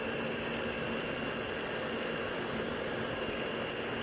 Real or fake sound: real